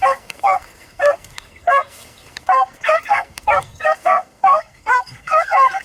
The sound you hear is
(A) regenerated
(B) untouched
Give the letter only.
A